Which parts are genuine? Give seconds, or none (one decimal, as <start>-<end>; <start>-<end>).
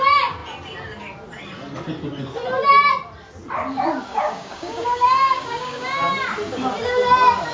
0.0-4.1; 6.1-7.5